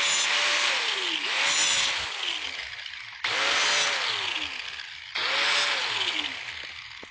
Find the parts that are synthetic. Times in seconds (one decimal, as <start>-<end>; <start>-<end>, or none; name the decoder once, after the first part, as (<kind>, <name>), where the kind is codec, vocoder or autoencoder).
none